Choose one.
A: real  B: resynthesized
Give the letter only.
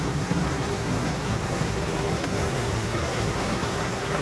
B